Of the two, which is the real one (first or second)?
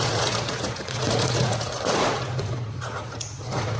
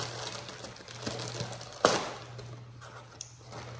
second